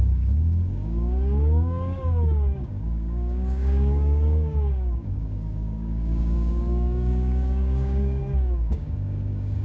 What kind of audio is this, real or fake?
fake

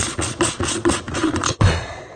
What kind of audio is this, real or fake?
fake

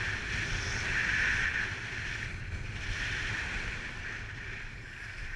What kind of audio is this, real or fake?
real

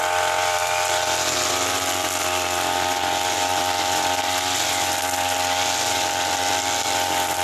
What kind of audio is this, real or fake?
real